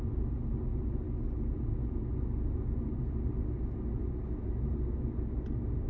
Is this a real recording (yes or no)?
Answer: yes